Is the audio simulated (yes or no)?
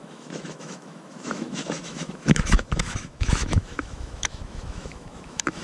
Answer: yes